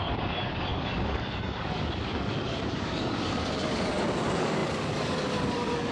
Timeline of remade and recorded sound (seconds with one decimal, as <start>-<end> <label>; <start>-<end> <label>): 0.0-5.9 remade